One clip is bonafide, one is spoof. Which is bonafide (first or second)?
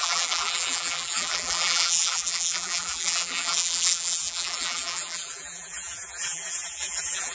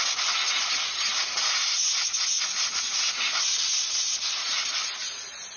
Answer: second